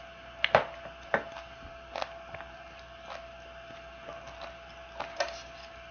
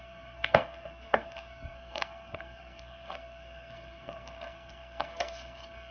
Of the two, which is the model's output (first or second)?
second